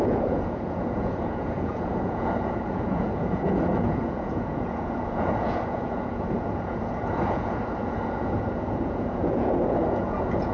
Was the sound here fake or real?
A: fake